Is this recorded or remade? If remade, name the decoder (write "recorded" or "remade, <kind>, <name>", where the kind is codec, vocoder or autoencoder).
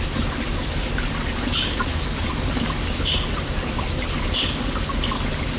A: recorded